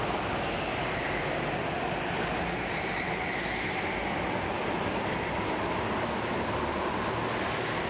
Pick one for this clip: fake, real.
real